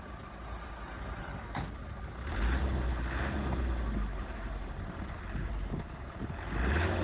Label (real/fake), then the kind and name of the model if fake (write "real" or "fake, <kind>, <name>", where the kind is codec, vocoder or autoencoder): real